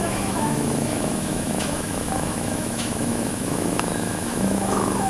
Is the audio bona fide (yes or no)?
no